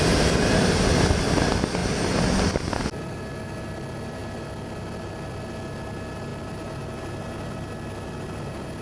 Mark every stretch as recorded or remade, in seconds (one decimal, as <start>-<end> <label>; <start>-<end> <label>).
0.0-8.8 recorded